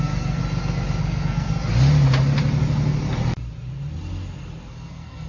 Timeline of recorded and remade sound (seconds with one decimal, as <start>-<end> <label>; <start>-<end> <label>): 0.0-0.4 remade; 0.4-1.0 recorded; 1.0-1.5 remade; 1.5-4.7 recorded; 4.7-5.3 remade

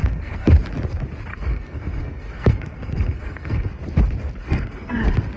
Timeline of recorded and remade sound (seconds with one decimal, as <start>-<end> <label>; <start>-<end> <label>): 0.0-0.5 remade; 0.5-1.3 recorded; 1.3-3.8 remade; 3.8-4.4 recorded; 4.4-5.0 remade; 5.0-5.4 recorded